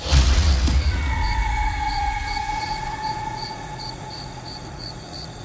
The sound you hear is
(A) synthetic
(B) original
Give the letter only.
A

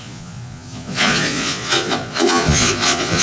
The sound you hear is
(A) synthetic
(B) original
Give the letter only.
A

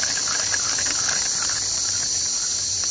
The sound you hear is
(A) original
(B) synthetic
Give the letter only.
A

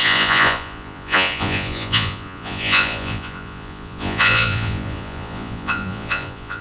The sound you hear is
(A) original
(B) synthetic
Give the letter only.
B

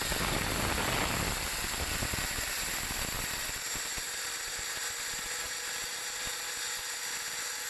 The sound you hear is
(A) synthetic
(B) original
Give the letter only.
B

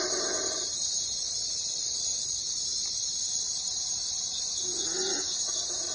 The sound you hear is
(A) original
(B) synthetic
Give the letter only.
A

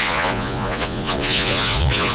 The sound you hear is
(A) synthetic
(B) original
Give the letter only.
A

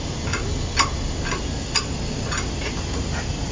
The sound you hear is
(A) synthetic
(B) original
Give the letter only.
B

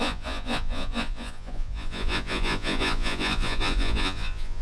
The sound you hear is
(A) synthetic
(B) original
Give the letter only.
A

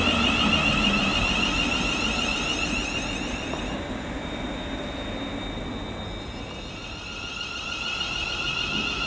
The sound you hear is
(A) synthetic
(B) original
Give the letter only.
B